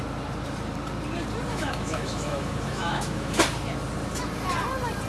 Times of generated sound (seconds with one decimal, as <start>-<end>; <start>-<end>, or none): 1.5-3.4